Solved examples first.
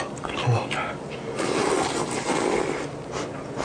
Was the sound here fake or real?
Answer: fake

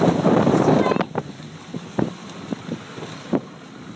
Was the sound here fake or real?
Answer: real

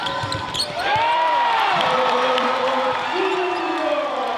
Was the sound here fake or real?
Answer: fake